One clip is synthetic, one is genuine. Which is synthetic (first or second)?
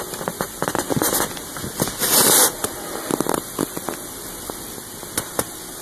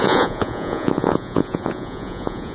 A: second